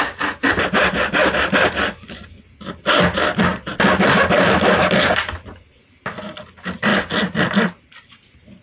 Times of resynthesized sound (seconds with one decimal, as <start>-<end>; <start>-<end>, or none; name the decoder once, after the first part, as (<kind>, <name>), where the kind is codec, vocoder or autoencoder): none

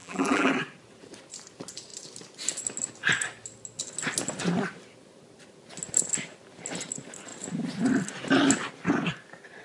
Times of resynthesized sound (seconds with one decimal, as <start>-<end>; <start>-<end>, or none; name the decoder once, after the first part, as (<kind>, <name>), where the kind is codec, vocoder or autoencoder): 0.0-0.5 (vocoder, BigVGAN v2)

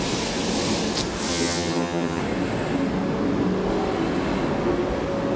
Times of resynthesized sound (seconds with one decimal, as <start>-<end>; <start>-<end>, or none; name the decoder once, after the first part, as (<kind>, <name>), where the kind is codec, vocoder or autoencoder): 1.3-2.2 (vocoder, HiFi-GAN)

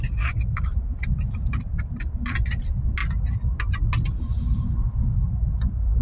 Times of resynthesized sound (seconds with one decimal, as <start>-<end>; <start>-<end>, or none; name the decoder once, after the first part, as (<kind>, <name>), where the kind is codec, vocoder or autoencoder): 0.8-1.6 (vocoder, BigVGAN v2)

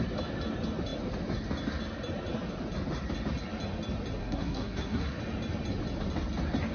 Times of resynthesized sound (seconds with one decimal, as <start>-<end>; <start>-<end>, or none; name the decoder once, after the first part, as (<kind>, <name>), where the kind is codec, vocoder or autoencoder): 4.2-5.2 (codec, SNAC)

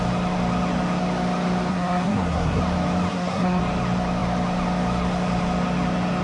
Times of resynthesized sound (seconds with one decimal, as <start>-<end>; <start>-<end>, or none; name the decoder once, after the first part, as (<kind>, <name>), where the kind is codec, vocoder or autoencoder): 1.7-2.6 (codec, SNAC); 3.1-3.6